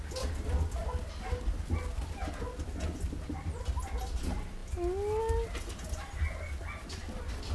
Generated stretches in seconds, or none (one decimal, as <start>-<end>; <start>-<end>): none